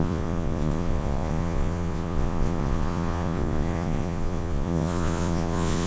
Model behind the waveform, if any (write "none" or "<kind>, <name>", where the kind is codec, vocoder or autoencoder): vocoder, Vocos